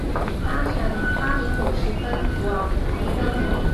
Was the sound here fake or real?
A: real